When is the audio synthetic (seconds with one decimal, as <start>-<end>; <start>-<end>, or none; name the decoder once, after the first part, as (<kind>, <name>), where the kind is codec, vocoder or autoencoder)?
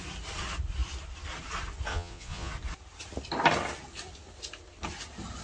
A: 1.9-2.5 (vocoder, Vocos)